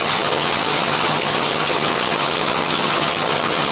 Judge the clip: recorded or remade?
remade